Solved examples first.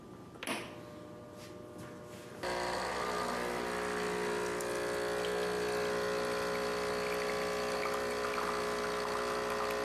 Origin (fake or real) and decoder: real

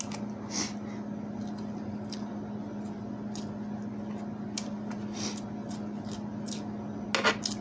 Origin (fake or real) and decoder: real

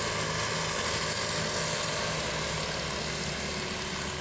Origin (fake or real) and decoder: real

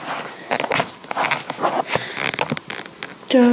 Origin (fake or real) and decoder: real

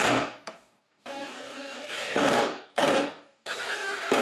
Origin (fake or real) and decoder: fake, codec, DAC